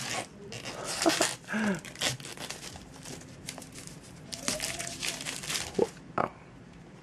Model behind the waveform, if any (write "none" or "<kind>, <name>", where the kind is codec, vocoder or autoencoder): vocoder, BigVGAN v2